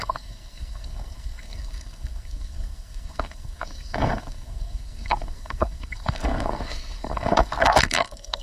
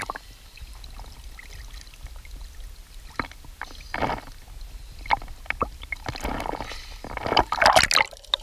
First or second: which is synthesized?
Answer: first